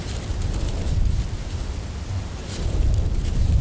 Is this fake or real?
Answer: fake